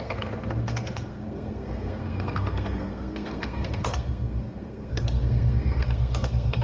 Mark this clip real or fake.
fake